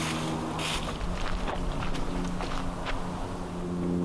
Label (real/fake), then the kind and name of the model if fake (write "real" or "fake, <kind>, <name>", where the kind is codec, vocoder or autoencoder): real